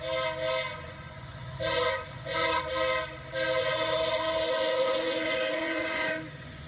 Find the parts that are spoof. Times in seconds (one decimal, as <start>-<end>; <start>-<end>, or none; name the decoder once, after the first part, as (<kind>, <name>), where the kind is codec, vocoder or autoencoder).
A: 0.7-2.6 (vocoder, Vocos); 3.6-6.7